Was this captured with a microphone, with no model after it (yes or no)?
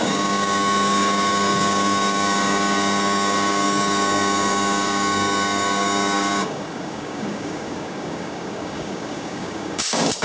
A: no